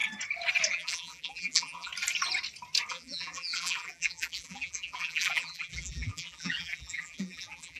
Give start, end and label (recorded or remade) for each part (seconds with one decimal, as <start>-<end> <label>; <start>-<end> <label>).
0.0-0.7 recorded; 0.7-1.9 remade; 1.9-2.9 recorded; 2.9-7.8 remade